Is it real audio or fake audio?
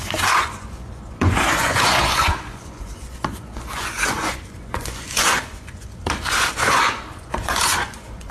fake